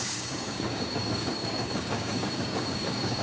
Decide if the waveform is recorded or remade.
remade